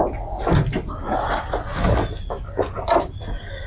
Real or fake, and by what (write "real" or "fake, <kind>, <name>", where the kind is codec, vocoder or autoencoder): real